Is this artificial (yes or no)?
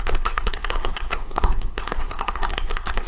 yes